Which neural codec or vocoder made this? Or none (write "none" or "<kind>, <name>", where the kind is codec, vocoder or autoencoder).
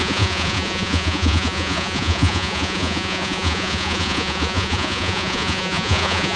vocoder, Vocos